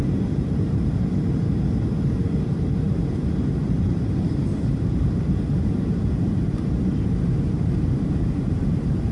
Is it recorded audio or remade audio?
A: remade